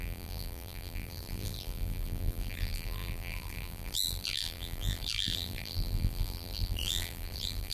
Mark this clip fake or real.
fake